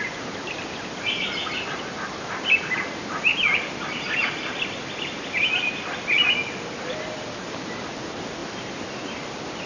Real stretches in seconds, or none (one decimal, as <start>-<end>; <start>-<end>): 0.0-9.7